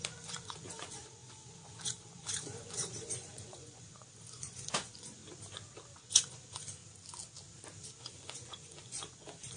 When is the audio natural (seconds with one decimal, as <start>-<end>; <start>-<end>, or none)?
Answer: 5.2-6.0; 6.8-8.0